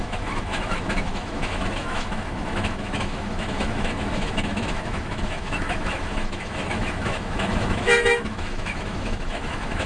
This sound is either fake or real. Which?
fake